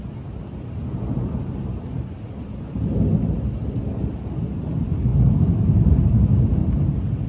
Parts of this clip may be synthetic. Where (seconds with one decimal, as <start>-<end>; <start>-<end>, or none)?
none